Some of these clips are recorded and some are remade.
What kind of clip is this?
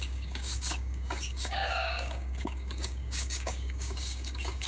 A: remade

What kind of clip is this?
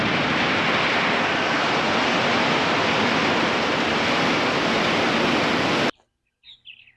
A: recorded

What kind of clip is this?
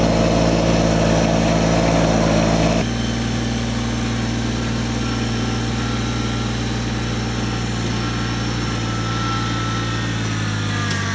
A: recorded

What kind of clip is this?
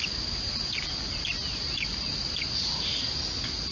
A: recorded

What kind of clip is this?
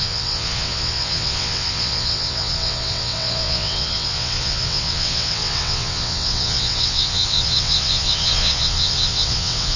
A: remade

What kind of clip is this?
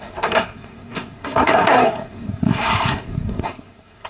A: remade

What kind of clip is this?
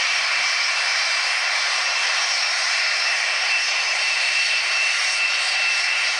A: remade